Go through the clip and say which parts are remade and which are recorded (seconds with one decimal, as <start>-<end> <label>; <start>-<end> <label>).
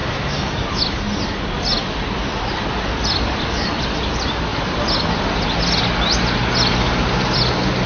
0.0-0.8 remade; 0.8-7.9 recorded